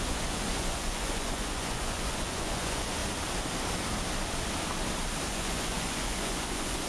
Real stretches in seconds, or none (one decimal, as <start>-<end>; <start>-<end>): 3.0-5.3